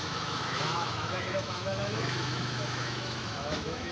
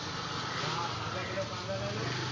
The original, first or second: second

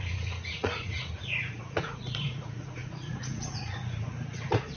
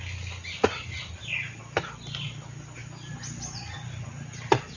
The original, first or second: second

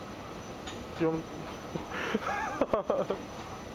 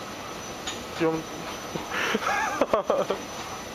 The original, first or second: second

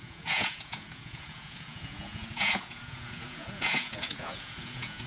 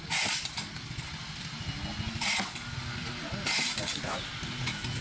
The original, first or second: second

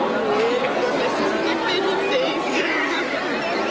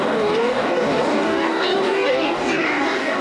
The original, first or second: first